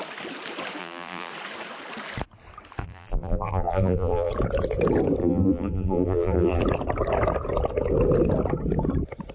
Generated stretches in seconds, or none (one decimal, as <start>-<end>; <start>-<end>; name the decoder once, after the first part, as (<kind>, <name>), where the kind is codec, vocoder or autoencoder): 0.8-1.3 (vocoder, BigVGAN v2); 2.8-4.3; 5.2-6.6